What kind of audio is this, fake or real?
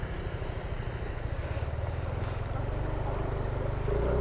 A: real